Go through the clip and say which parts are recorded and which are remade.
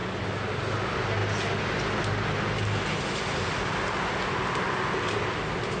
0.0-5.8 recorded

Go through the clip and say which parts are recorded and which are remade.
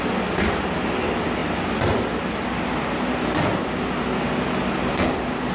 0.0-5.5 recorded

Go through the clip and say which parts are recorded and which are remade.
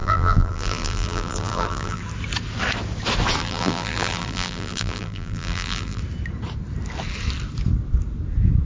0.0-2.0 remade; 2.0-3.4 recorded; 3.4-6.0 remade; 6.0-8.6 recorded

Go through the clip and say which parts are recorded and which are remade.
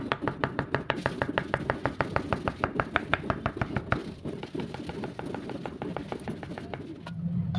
0.0-4.0 recorded; 4.0-4.8 remade; 4.8-7.6 recorded